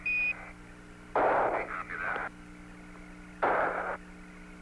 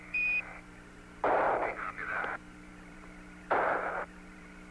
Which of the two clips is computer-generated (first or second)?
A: second